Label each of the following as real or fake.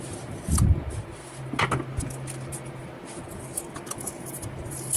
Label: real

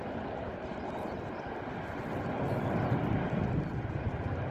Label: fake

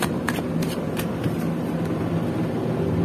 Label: real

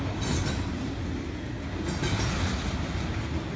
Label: real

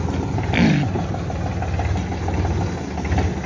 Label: real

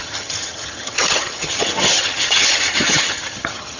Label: fake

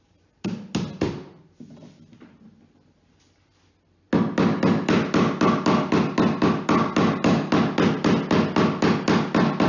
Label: real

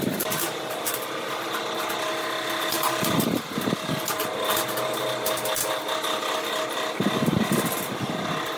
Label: real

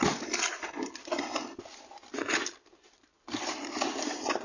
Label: real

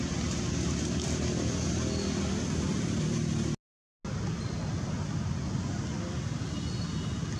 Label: real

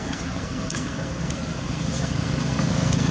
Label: fake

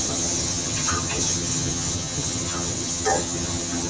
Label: fake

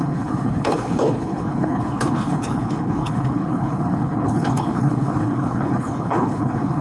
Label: fake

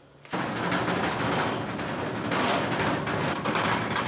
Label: real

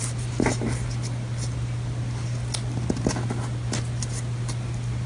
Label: real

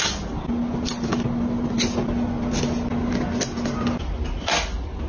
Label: real